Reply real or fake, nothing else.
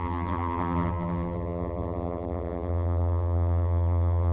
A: fake